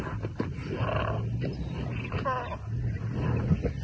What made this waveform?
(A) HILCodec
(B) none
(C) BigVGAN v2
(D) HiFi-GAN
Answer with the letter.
B